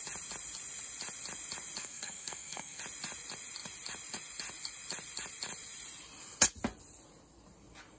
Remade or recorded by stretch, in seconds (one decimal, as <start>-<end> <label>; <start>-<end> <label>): 0.0-1.8 recorded; 1.8-2.8 remade; 2.8-8.0 recorded